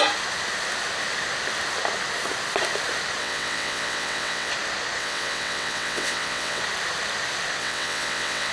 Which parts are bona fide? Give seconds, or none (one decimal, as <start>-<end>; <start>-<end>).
0.0-3.2; 4.5-5.0; 6.6-7.6

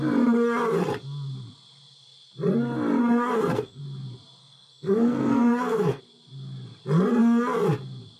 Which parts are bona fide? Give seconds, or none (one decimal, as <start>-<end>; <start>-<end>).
0.0-3.0; 3.8-4.4; 6.0-8.2